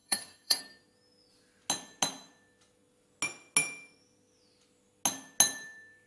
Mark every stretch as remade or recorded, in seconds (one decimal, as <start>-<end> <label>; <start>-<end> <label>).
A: 0.0-0.6 remade; 0.6-6.1 recorded